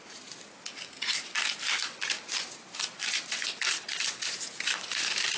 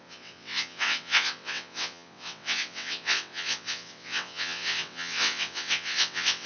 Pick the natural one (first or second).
first